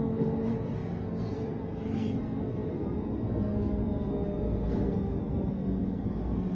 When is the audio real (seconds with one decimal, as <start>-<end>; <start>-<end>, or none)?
none